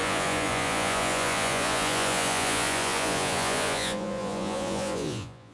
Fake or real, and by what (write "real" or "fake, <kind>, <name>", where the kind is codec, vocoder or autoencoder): fake, vocoder, Vocos